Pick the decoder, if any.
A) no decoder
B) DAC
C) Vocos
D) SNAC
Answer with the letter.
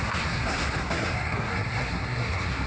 D